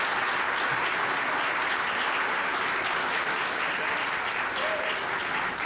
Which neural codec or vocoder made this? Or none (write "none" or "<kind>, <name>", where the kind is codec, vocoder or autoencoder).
none